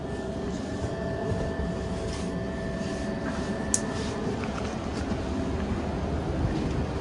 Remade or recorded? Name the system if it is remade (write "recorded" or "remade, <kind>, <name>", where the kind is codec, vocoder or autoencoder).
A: recorded